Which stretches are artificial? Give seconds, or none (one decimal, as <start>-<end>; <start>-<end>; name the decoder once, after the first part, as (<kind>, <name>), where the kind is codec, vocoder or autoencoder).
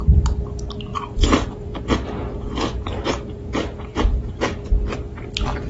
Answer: 0.9-4.3 (vocoder, Vocos)